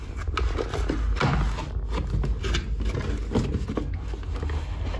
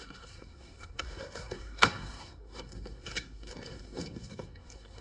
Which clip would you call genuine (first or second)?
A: first